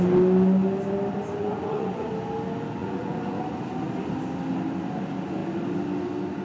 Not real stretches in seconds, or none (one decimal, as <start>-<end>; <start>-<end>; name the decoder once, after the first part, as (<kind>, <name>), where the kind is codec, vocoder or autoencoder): 1.4-2.1 (vocoder, Vocos); 2.8-3.4

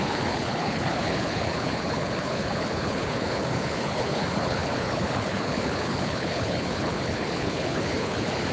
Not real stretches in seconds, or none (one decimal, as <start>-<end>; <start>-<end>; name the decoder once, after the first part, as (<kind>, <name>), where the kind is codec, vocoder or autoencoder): 0.0-8.5 (codec, HILCodec)

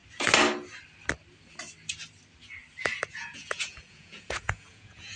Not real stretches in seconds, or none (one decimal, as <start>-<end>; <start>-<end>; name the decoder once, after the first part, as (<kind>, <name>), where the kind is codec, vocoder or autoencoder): 3.1-5.2 (vocoder, Vocos)

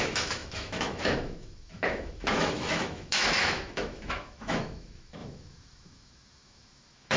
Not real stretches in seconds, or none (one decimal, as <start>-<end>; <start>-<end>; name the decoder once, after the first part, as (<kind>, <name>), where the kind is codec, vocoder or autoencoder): 0.0-7.2 (autoencoder, DAC-VAE)

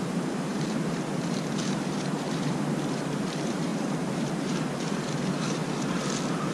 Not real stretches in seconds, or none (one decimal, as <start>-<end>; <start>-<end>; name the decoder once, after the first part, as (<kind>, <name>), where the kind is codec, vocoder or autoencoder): 0.0-5.6 (vocoder, BigVGAN v2)

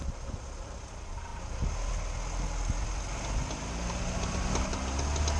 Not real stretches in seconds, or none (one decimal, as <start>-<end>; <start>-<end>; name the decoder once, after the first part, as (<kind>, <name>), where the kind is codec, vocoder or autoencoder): none

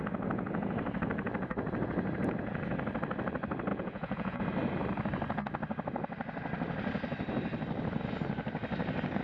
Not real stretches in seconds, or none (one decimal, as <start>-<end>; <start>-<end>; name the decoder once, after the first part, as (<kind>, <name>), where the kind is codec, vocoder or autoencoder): 3.7-4.4 (vocoder, Vocos)